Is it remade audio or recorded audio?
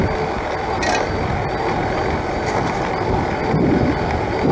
recorded